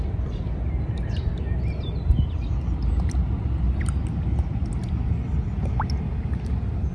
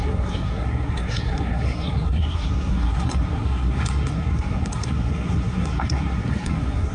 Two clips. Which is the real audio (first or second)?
first